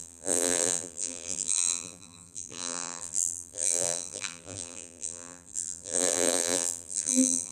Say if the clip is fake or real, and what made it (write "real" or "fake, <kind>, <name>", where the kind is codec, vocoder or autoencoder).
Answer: fake, vocoder, BigVGAN v2